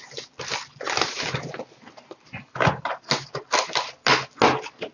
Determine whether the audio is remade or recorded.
recorded